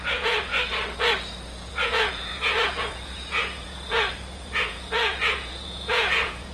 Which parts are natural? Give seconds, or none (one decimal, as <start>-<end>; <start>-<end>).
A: 0.5-1.7